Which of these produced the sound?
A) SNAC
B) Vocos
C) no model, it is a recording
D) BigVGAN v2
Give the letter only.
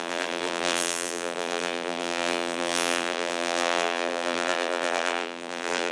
D